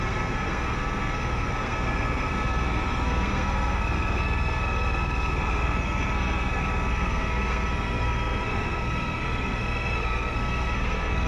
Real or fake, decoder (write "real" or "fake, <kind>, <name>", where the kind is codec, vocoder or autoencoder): fake, codec, SNAC